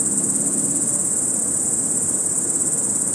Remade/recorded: recorded